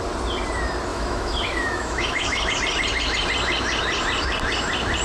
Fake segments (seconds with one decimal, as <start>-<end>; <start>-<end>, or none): 0.9-2.5